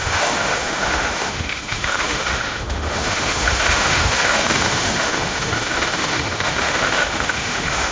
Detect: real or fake fake